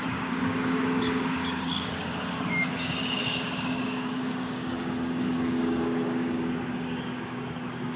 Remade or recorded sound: remade